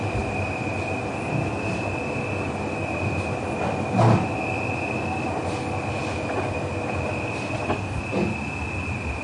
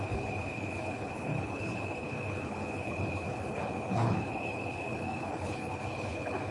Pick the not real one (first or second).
second